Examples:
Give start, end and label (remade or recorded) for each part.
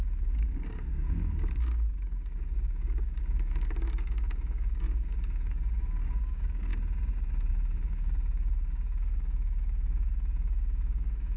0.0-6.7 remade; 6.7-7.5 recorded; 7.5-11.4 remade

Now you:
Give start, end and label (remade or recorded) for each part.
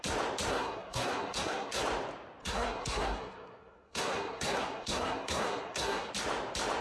0.0-0.5 recorded; 0.5-1.8 remade; 1.8-2.4 recorded; 2.4-6.1 remade; 6.1-6.8 recorded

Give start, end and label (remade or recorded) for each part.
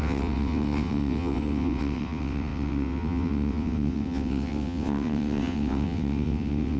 0.0-6.8 remade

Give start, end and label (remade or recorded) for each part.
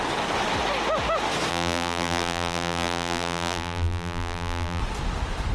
0.0-1.5 recorded; 1.5-4.8 remade; 4.8-5.5 recorded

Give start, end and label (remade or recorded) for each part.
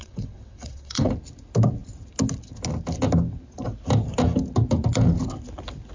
0.0-1.1 remade; 1.1-5.9 recorded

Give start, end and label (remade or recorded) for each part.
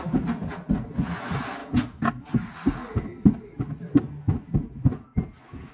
0.0-5.7 recorded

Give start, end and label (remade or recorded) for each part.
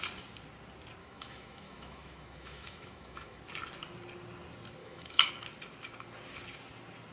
0.0-1.0 recorded; 1.0-3.4 remade; 3.4-4.8 recorded; 4.8-5.3 remade; 5.3-7.1 recorded